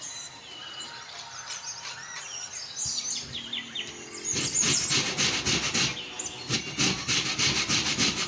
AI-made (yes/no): no